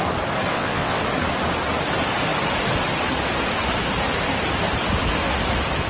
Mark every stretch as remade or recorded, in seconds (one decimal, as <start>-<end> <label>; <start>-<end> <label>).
0.0-0.5 recorded; 0.5-1.0 remade; 1.0-5.9 recorded